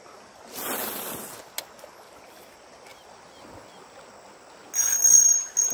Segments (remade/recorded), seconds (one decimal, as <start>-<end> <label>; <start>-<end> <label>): 0.0-5.7 recorded